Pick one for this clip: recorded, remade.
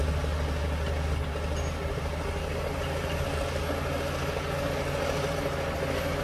recorded